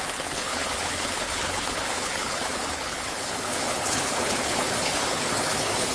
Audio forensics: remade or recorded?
remade